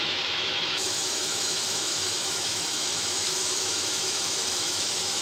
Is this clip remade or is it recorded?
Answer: remade